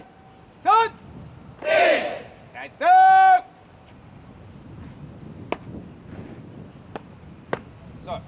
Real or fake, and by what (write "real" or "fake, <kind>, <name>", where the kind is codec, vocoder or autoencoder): real